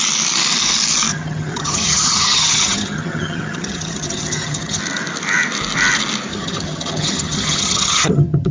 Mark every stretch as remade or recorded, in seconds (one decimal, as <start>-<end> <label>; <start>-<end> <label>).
0.0-1.1 recorded; 1.1-4.8 remade; 4.8-6.3 recorded; 6.3-8.5 remade